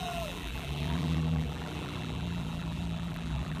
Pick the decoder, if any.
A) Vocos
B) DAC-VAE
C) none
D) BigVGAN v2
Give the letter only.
D